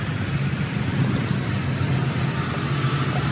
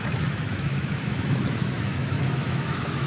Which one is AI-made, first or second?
second